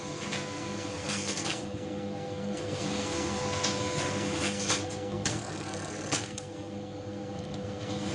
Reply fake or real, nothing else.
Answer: fake